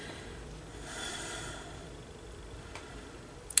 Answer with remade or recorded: remade